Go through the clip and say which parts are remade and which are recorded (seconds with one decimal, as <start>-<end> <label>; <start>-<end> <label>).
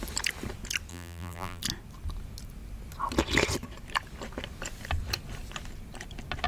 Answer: 0.0-0.9 recorded; 0.9-1.6 remade; 1.6-6.5 recorded